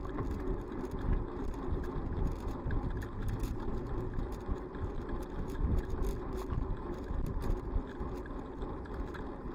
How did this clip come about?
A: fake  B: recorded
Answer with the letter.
A